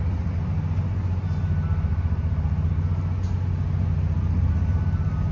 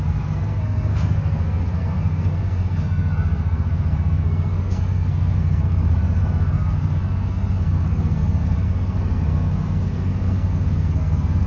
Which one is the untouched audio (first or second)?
first